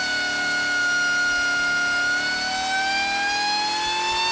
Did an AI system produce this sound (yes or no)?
no